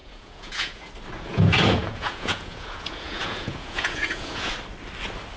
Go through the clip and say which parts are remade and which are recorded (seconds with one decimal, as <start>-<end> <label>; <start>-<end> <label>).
0.0-0.9 remade; 0.9-1.3 recorded; 1.3-4.5 remade; 4.5-5.4 recorded